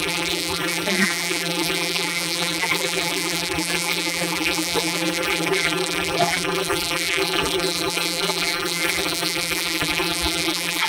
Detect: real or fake fake